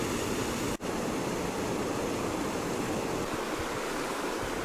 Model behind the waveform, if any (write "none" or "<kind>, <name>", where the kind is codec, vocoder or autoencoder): none